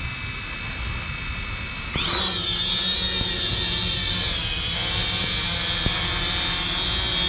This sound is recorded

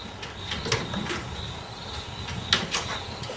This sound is remade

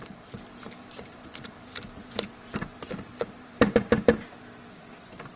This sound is remade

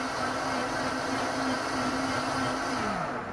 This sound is recorded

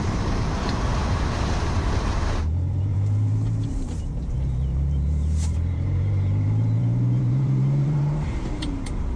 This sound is remade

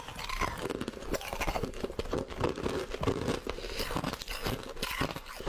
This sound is recorded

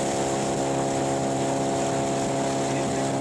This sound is recorded